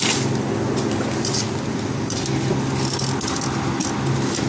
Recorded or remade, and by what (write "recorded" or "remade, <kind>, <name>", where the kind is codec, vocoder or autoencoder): recorded